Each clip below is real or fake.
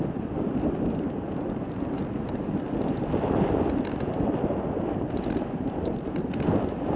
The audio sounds real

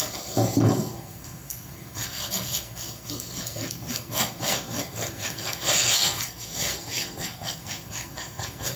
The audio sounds fake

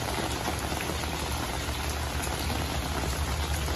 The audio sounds real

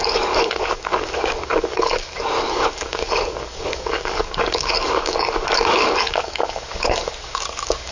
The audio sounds fake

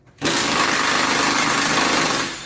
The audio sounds real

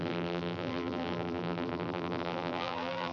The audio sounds fake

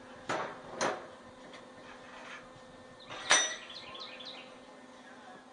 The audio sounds real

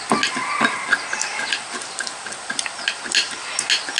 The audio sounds real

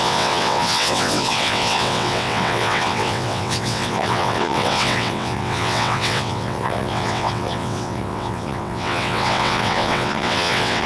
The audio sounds fake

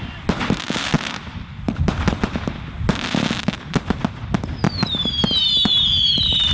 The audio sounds real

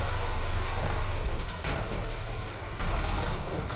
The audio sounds fake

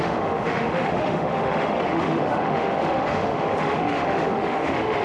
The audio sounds fake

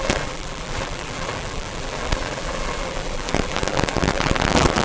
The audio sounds fake